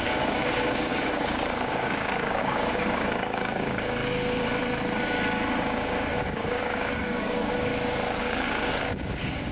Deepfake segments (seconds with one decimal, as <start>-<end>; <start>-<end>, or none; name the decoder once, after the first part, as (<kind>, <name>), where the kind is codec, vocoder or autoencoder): 0.0-4.0 (codec, DAC); 5.6-7.7; 8.2-9.5